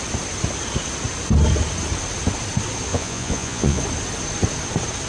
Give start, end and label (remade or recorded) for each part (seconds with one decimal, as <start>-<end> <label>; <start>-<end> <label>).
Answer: 0.0-2.9 recorded; 2.9-3.8 remade; 3.8-5.1 recorded